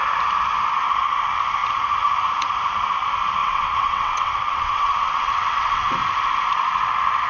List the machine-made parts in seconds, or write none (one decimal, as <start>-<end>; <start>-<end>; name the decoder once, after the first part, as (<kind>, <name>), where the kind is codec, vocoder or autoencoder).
3.4-5.9 (vocoder, WaveNeXt)